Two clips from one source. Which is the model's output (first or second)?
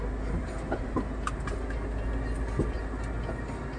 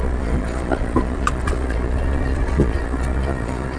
second